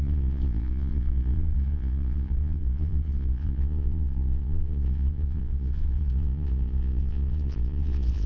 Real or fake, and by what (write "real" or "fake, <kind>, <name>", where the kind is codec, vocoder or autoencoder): fake, vocoder, Vocos